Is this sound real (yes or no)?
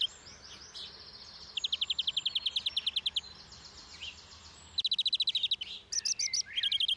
yes